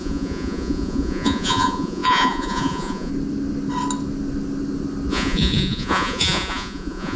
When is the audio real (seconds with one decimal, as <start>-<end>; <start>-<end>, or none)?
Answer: 3.1-5.1